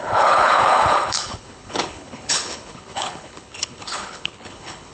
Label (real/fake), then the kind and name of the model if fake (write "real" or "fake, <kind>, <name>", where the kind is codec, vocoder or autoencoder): fake, codec, HILCodec